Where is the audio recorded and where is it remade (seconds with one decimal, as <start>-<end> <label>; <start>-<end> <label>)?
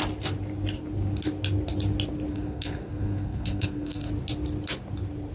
0.0-2.3 recorded; 2.3-4.1 remade; 4.1-5.3 recorded